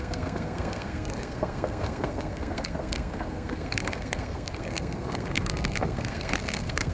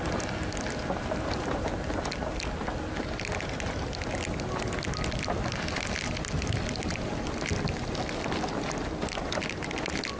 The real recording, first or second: second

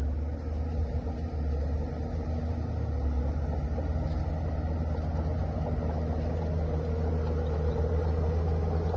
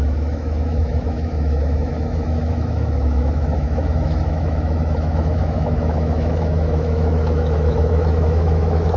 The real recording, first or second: first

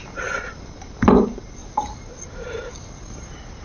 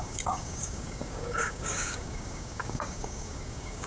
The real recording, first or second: first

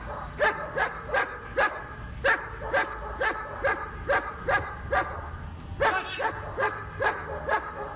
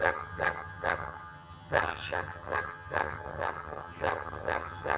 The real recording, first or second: first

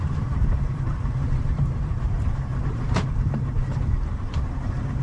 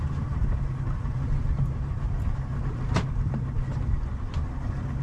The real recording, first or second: second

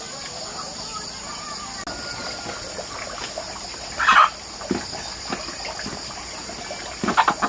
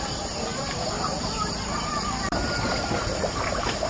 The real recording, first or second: first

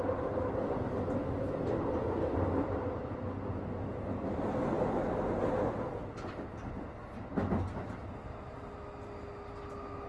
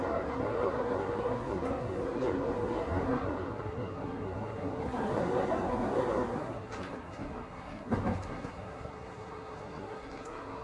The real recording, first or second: first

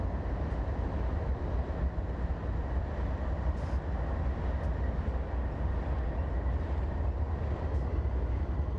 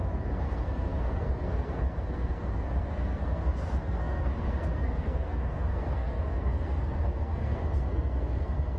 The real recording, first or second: first